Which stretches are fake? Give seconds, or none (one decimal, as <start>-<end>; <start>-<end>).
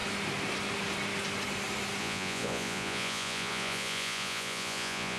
2.0-5.2